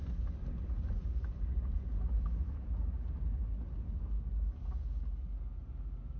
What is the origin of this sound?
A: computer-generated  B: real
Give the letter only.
B